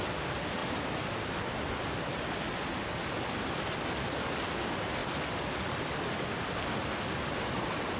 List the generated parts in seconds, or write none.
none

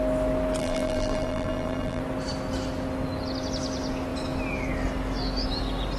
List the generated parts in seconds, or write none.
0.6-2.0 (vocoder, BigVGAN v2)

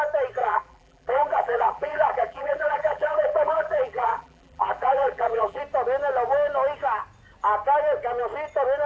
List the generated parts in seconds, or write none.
0.4-5.6 (vocoder, BigVGAN v2)

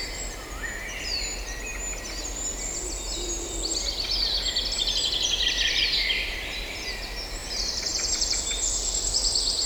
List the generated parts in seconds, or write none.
7.4-9.7 (vocoder, BigVGAN v2)

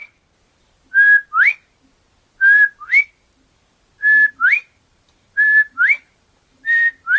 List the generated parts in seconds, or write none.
4.3-7.2 (vocoder, BigVGAN v2)